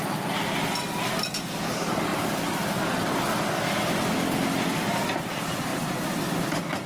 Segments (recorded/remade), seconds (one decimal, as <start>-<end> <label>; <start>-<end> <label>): 0.0-6.9 recorded